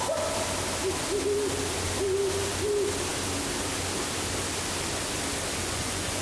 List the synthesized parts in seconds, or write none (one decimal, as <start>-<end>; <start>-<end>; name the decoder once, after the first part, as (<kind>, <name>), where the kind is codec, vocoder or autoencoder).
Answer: 5.6-6.2 (vocoder, Vocos)